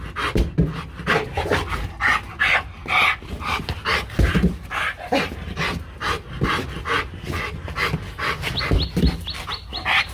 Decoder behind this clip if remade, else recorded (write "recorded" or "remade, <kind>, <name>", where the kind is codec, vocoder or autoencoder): recorded